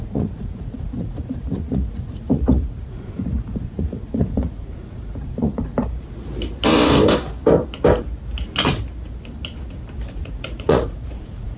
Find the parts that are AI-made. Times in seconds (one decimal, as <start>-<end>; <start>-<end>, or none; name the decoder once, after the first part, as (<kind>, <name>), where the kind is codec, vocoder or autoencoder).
0.0-5.7 (vocoder, Vocos); 10.2-11.6